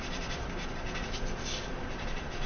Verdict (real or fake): real